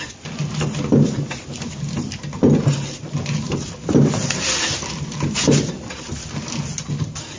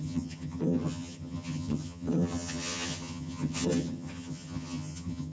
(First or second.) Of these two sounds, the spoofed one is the second